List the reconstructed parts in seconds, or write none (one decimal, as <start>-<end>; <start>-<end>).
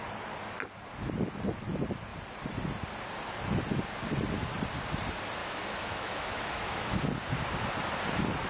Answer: 5.4-7.0